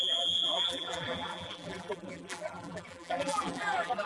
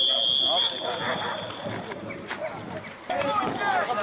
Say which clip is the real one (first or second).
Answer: second